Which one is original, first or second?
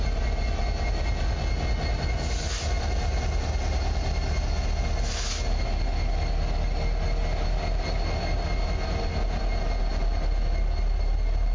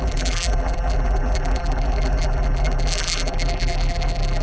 first